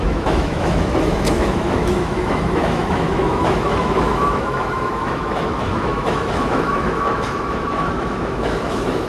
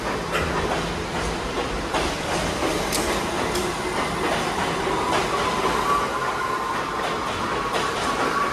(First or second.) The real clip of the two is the second